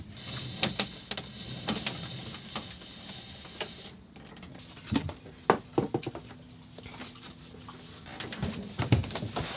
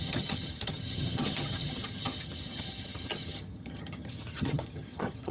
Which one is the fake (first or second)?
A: second